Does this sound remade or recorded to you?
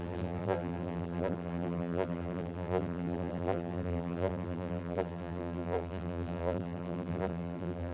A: remade